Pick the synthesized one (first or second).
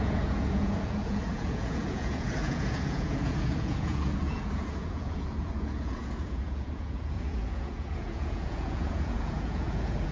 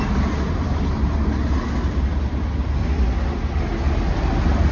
first